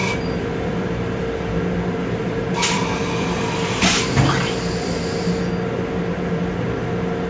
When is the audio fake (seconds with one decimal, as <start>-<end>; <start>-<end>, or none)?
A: 0.0-1.6; 2.0-4.2